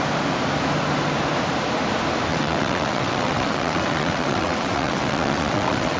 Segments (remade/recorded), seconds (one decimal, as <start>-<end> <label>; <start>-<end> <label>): 0.0-2.3 recorded; 2.3-6.0 remade